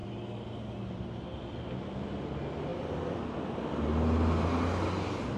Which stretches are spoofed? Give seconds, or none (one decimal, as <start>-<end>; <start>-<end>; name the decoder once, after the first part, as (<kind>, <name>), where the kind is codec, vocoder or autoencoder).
none